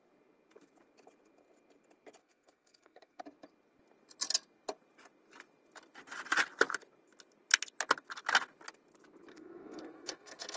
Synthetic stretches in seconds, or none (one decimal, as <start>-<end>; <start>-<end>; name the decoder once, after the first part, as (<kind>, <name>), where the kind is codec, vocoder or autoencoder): 2.2-3.2 (codec, SNAC); 9.3-10.6